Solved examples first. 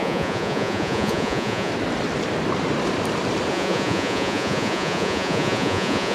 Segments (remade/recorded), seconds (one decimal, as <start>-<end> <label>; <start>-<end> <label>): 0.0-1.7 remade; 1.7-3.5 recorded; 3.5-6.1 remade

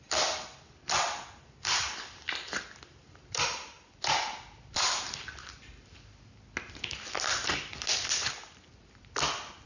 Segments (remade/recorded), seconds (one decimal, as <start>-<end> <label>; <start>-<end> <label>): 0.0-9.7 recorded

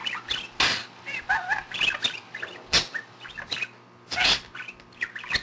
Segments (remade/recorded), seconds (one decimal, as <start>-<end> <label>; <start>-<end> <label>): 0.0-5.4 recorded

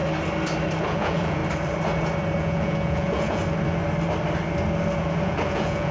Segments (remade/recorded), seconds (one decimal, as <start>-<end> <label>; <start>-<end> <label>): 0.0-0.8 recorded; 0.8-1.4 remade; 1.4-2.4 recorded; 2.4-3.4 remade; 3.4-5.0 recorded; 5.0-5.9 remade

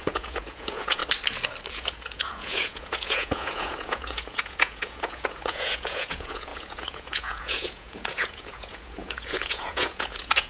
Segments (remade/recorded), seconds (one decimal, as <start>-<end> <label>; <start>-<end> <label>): 0.0-1.0 remade; 1.0-1.7 recorded; 1.7-10.5 remade